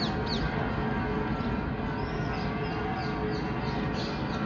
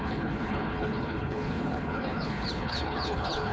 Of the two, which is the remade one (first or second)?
second